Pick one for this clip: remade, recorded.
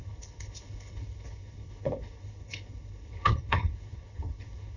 remade